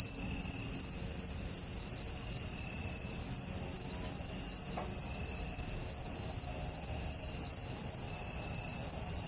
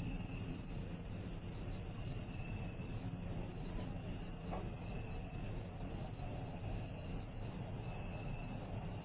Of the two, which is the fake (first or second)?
second